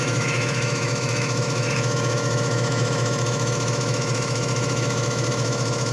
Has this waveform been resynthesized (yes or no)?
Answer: yes